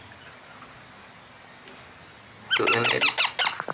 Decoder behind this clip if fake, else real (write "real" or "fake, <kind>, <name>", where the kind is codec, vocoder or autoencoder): real